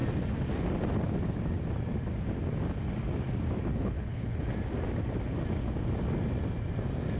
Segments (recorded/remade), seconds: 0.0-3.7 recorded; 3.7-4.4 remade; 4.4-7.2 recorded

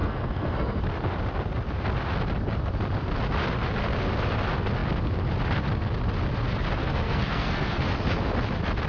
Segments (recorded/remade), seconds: 0.0-0.8 remade; 0.8-6.8 recorded; 6.8-7.8 remade; 7.8-8.9 recorded

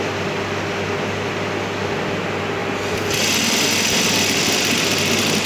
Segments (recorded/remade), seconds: 0.0-5.5 recorded

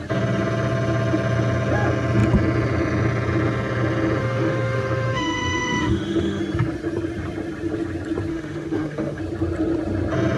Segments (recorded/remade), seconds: 0.0-4.2 recorded; 4.2-6.4 remade; 6.4-8.3 recorded; 8.3-9.2 remade; 9.2-10.4 recorded

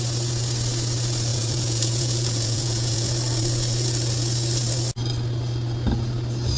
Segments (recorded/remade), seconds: 0.0-1.3 recorded; 1.3-3.1 remade; 3.1-6.6 recorded